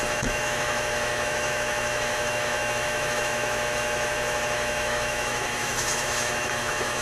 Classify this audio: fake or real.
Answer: fake